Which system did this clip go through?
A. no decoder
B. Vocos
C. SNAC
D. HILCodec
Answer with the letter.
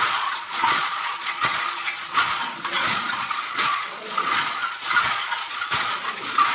B